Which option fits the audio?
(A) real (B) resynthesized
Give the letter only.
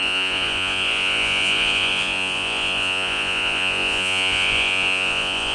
B